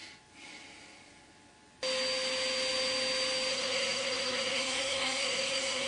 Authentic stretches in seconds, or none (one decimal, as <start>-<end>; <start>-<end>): 0.0-3.5